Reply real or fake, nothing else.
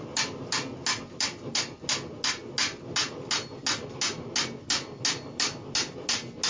real